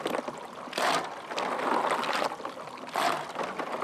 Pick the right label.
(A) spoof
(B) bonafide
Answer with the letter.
B